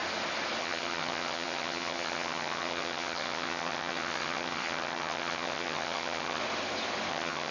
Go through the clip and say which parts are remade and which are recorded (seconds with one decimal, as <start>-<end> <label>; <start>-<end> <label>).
0.0-0.6 recorded; 0.6-6.4 remade; 6.4-7.1 recorded; 7.1-7.5 remade